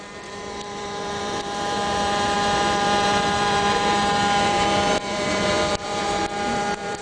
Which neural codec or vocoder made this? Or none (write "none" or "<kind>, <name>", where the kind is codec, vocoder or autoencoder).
vocoder, BigVGAN v2